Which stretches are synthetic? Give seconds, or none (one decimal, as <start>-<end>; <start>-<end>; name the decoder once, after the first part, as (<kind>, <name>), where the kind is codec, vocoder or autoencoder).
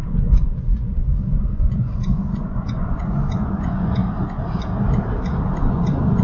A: 0.0-4.0 (vocoder, Vocos); 5.7-6.2